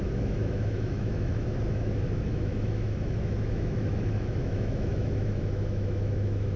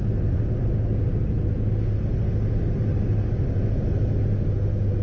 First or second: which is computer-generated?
first